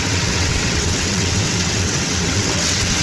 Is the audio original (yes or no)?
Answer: no